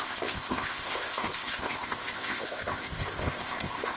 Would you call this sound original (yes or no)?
no